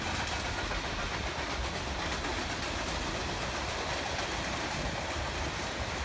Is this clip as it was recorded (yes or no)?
yes